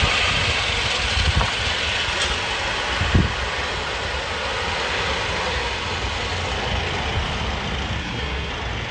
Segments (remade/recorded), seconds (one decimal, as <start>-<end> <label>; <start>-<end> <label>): 0.0-8.0 recorded; 8.0-8.5 remade; 8.5-8.9 recorded